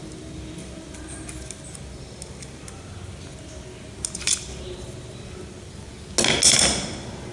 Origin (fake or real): real